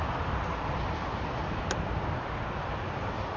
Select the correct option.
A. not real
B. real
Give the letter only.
B